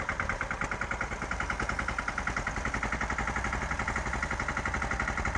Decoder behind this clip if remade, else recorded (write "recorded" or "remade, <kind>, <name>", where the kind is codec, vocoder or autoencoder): recorded